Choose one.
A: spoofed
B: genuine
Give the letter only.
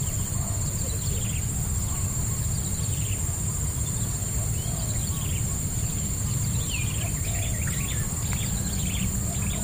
B